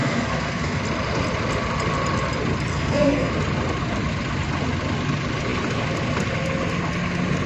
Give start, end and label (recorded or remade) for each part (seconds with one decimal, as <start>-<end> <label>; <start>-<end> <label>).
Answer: 0.0-0.8 remade; 0.8-2.7 recorded; 2.7-3.3 remade; 3.3-7.5 recorded